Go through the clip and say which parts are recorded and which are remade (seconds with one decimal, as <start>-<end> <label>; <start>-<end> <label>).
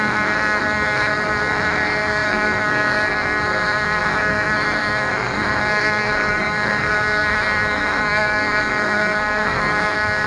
0.0-10.3 remade